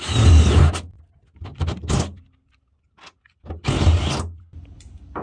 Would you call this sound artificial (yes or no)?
no